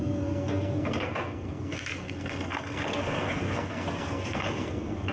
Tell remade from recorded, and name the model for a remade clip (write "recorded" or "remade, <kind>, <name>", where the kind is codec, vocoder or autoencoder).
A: remade, codec, SNAC